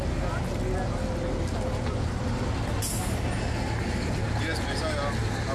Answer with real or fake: real